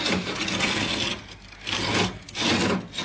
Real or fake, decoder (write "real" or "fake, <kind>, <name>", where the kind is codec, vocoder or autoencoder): real